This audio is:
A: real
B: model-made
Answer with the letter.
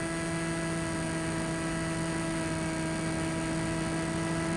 A